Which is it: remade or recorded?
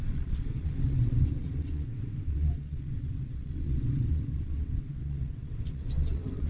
remade